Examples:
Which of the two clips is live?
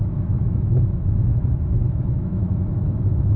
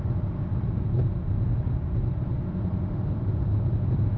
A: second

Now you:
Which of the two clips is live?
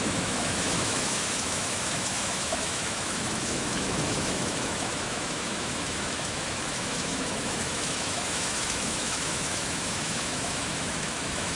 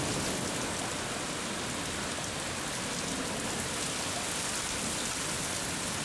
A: second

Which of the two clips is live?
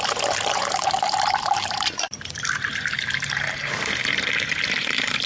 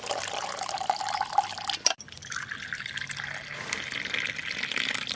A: second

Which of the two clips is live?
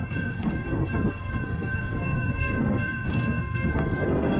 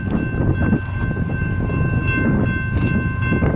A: second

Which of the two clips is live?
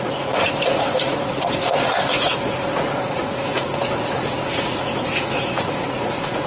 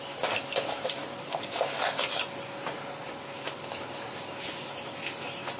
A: second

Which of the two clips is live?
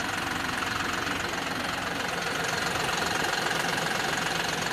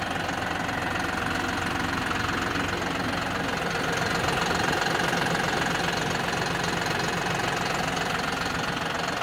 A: second